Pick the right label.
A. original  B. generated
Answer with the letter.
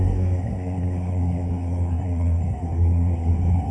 B